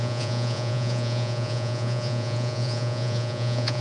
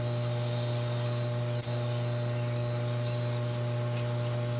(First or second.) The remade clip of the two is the first